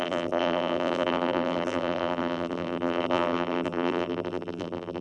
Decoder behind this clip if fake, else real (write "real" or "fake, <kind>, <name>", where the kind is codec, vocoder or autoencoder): fake, vocoder, BigVGAN v2